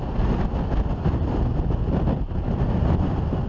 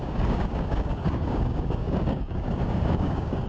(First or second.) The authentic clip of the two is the first